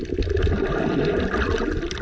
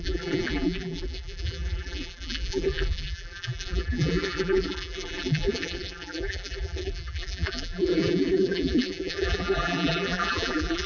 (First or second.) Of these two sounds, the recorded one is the first